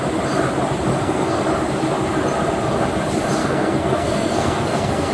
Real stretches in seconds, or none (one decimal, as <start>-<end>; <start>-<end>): 0.0-0.9; 1.4-3.4